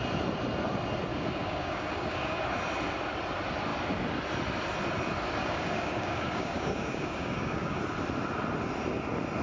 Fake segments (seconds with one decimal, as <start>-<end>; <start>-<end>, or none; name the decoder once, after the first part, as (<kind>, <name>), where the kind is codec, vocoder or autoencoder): 1.1-2.4 (codec, DAC); 5.4-7.8